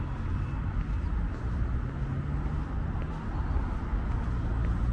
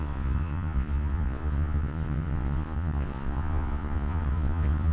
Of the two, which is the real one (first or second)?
first